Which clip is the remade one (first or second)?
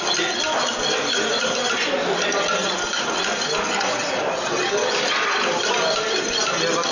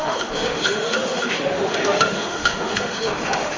second